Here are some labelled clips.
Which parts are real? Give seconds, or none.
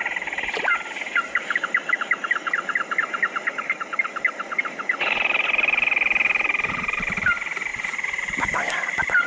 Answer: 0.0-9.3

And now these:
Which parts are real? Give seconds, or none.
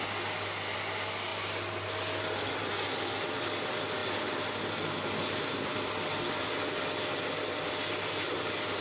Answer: 0.0-8.8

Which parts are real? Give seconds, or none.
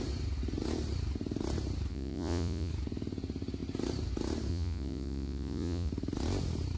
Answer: 0.0-1.9; 2.7-4.5; 5.9-6.8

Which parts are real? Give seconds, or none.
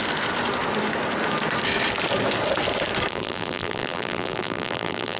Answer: 0.0-3.1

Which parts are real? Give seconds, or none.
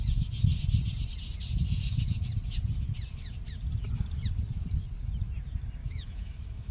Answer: 0.0-5.8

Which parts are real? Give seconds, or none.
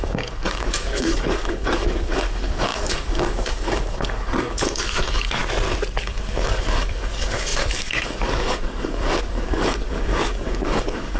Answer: 5.4-6.0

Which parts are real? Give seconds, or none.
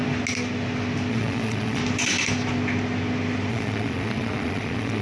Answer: 0.0-1.1; 1.8-3.5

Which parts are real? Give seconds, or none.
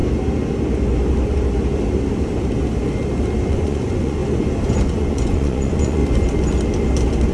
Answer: 0.0-3.5; 4.2-4.7; 6.0-7.3